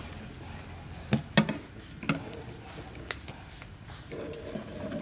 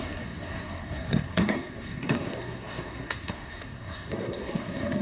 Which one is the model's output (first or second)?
second